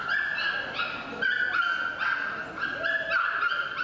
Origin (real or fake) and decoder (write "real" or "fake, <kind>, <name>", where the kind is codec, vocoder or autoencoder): real